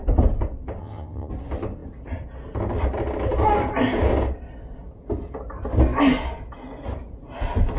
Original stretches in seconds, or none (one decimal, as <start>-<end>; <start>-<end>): 0.0-0.8; 1.3-7.8